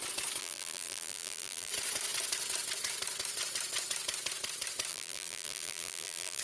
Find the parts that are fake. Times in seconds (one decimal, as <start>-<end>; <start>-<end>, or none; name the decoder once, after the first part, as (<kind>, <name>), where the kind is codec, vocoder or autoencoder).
0.4-1.7 (vocoder, BigVGAN v2); 4.9-6.4